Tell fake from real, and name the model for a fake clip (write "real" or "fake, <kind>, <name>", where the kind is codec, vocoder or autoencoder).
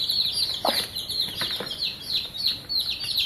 real